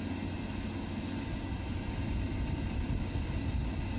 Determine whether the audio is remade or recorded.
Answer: recorded